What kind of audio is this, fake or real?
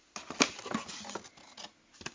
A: real